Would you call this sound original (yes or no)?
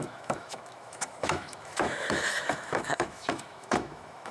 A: no